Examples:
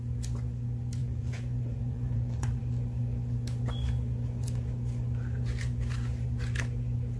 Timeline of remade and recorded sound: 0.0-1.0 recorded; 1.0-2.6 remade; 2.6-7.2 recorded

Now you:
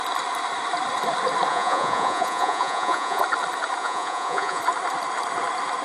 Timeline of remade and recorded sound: 0.0-1.5 recorded; 1.5-3.2 remade; 3.2-3.8 recorded; 3.8-4.6 remade; 4.6-5.8 recorded

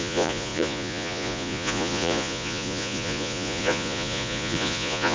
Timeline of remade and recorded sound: 0.0-5.1 remade

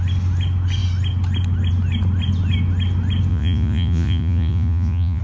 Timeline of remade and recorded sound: 0.0-3.3 recorded; 3.3-5.2 remade